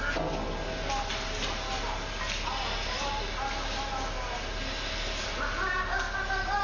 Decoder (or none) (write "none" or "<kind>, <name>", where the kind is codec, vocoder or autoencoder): none